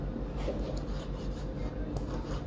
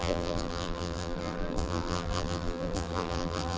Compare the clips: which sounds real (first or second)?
first